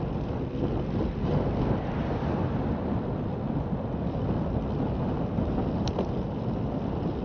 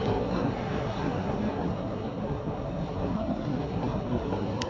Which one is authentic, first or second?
first